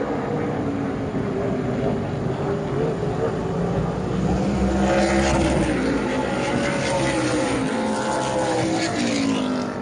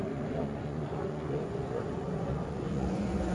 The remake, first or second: second